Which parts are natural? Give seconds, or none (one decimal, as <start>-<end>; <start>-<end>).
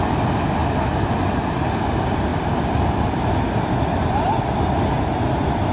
0.0-2.3; 4.7-5.7